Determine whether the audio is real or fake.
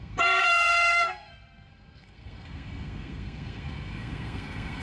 fake